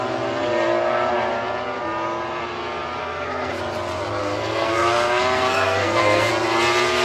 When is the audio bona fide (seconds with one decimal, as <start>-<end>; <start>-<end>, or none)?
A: 0.0-3.0; 3.6-4.2; 6.3-7.0